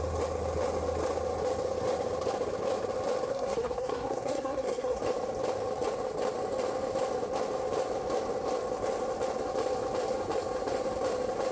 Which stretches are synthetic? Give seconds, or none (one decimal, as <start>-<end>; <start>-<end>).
3.3-5.0